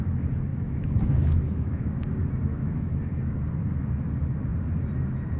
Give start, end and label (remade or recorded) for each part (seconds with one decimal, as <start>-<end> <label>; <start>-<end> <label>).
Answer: 0.0-0.5 recorded; 0.5-2.0 remade; 2.0-2.5 recorded; 2.5-3.0 remade; 3.0-5.4 recorded